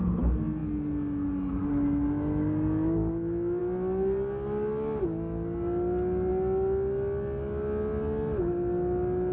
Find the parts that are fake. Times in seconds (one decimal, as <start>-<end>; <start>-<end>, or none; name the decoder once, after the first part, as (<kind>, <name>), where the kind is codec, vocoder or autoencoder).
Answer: none